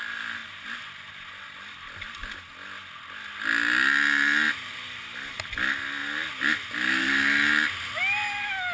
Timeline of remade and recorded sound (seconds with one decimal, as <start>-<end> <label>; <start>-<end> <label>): 0.0-8.7 recorded